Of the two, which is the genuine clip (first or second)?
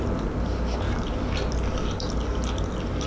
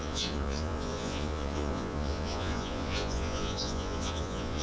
first